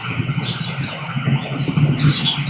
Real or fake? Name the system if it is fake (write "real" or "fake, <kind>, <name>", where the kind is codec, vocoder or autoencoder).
real